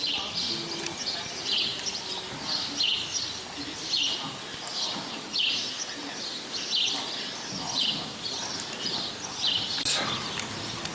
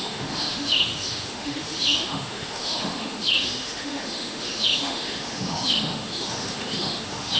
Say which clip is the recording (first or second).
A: first